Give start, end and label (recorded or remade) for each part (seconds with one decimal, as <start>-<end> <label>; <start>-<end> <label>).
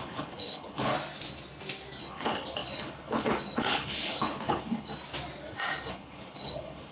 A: 0.0-0.9 remade; 0.9-2.0 recorded; 2.0-4.9 remade; 4.9-5.9 recorded; 5.9-6.9 remade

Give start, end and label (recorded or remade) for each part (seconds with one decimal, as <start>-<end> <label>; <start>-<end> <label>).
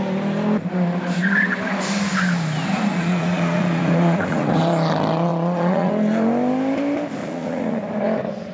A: 0.0-2.9 recorded; 2.9-4.6 remade; 4.6-5.3 recorded; 5.3-5.9 remade; 5.9-7.2 recorded; 7.2-7.8 remade; 7.8-8.5 recorded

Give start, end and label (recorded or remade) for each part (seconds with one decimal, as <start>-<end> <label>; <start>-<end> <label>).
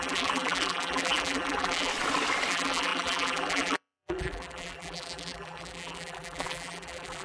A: 0.0-1.9 remade; 1.9-2.5 recorded; 2.5-7.2 remade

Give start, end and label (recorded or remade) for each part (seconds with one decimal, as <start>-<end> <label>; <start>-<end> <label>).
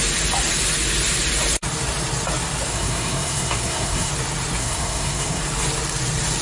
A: 0.0-2.7 recorded; 2.7-4.1 remade; 4.1-4.6 recorded; 4.6-5.4 remade; 5.4-6.4 recorded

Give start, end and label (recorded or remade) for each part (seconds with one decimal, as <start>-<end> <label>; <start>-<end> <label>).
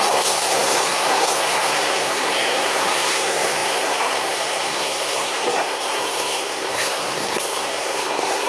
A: 0.0-8.5 remade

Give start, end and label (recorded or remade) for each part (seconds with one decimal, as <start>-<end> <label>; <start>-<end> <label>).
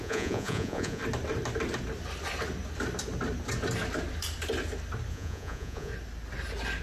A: 0.0-1.0 remade; 1.0-5.1 recorded; 5.1-5.9 remade; 5.9-6.8 recorded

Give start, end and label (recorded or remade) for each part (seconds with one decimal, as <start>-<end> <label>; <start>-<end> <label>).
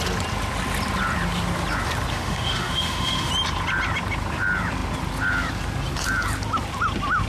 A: 0.0-2.1 recorded; 2.1-3.3 remade; 3.3-7.3 recorded